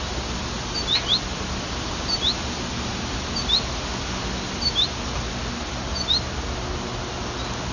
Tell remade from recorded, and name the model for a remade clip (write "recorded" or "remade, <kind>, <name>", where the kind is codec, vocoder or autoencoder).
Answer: recorded